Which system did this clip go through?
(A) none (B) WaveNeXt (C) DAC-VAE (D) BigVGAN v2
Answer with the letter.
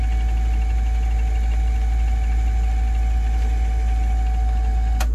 A